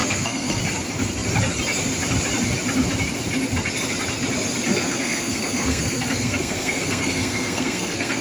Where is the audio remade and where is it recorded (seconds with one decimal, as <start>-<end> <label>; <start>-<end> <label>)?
0.0-0.6 remade; 0.6-4.7 recorded; 4.7-8.2 remade